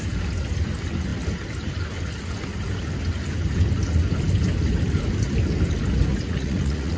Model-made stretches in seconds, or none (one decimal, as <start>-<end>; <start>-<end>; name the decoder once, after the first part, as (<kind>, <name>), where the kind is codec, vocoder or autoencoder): 6.1-7.0 (vocoder, Vocos)